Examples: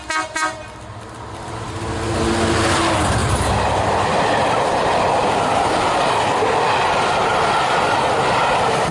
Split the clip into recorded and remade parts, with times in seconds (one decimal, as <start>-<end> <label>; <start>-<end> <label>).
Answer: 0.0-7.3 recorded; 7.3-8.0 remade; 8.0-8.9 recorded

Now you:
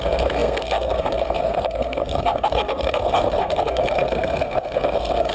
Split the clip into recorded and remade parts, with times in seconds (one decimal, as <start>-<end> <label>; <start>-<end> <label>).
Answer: 0.0-5.3 remade

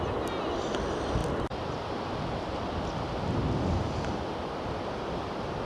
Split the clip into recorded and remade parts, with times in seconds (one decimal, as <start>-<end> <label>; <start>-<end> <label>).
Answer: 0.0-5.7 recorded

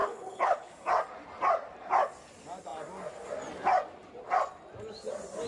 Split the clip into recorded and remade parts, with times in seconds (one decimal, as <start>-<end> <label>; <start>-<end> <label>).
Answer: 0.0-0.7 remade; 0.7-5.5 recorded

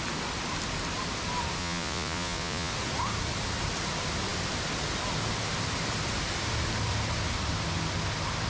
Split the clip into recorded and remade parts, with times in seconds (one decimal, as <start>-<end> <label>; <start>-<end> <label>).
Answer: 0.0-1.6 recorded; 1.6-2.7 remade; 2.7-8.5 recorded

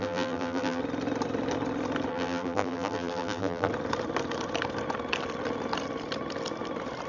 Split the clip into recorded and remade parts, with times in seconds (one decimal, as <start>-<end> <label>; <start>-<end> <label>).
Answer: 0.0-0.8 remade; 0.8-2.1 recorded; 2.1-3.7 remade; 3.7-7.1 recorded

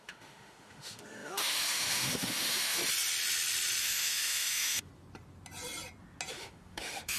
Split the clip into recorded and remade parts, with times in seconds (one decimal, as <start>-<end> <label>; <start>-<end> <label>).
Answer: 0.0-2.8 remade; 2.8-3.8 recorded; 3.8-4.9 remade; 4.9-6.3 recorded; 6.3-7.2 remade

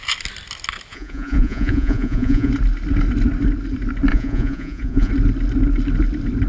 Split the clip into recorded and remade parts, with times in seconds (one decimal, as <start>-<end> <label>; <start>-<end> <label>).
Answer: 0.0-0.9 recorded; 0.9-2.5 remade; 2.5-4.1 recorded; 4.1-5.1 remade; 5.1-6.5 recorded